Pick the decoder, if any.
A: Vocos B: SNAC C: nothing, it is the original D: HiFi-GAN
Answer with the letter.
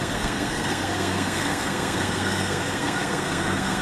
B